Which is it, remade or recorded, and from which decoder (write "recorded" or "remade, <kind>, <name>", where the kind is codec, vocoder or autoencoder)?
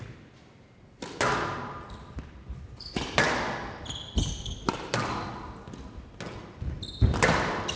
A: recorded